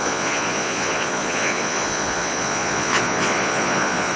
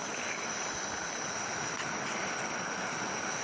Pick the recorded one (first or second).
second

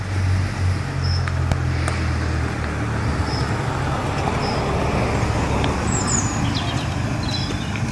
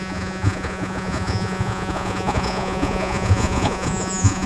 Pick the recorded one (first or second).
first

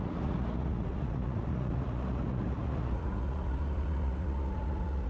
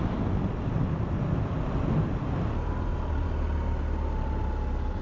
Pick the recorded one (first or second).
second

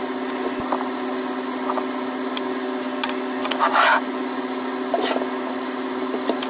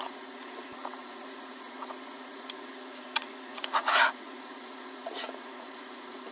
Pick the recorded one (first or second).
first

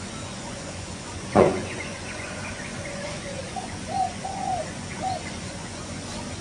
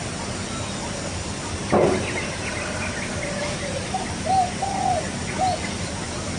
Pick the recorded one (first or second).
second